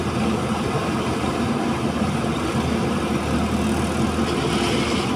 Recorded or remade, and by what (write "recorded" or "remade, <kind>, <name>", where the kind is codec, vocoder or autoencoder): recorded